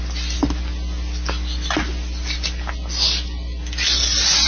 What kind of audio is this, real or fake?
real